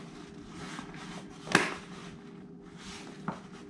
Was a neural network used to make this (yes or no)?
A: no